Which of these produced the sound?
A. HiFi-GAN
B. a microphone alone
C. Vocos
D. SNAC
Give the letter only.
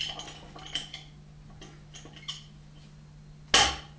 B